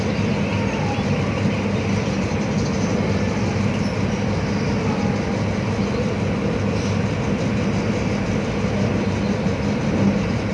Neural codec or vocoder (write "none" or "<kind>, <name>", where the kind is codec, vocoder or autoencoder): none